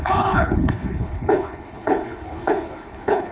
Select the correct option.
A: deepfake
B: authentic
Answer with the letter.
A